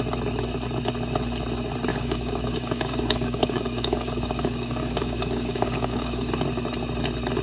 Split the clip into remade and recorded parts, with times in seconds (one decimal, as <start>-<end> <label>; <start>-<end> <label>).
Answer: 0.0-1.9 recorded; 1.9-6.3 remade; 6.3-7.4 recorded

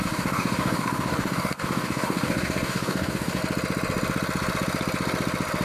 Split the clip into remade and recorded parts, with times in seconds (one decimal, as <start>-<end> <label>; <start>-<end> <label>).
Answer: 0.0-3.4 remade; 3.4-5.6 recorded

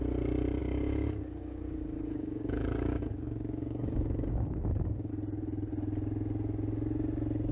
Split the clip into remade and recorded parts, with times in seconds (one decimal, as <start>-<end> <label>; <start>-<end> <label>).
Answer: 0.0-0.6 recorded; 0.6-5.1 remade; 5.1-7.5 recorded

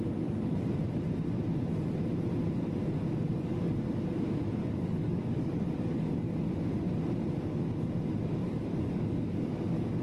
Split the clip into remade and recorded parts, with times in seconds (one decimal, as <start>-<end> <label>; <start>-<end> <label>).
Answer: 0.0-3.3 recorded; 3.3-3.9 remade; 3.9-4.6 recorded; 4.6-6.3 remade; 6.3-8.4 recorded; 8.4-10.0 remade